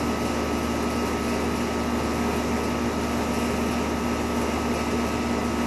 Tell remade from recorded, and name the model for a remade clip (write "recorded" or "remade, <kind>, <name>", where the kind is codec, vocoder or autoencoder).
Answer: recorded